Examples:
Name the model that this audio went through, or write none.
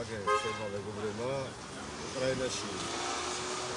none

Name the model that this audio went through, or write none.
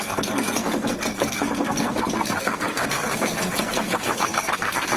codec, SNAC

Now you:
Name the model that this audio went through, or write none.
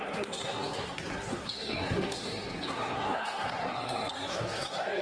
codec, SNAC